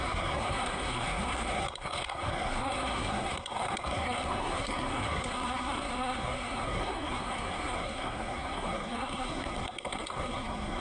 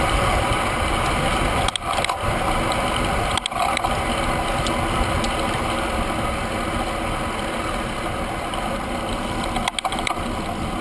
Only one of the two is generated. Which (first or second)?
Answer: first